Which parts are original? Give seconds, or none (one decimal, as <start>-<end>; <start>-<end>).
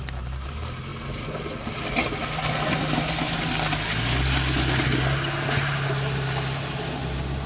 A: 0.0-7.5